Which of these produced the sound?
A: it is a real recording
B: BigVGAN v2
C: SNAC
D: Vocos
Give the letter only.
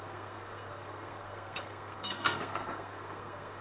C